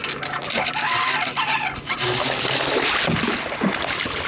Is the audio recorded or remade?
recorded